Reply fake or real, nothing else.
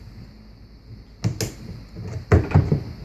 real